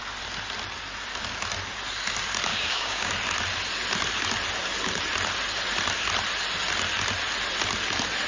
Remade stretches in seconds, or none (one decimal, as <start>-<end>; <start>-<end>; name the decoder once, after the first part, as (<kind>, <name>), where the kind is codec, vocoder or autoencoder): 2.5-3.1 (codec, DAC)